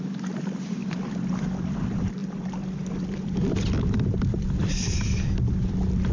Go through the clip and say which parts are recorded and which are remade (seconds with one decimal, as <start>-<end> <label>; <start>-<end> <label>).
0.0-6.1 remade